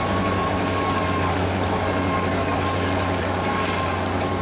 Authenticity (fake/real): real